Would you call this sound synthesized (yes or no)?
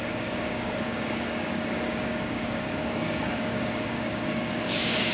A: yes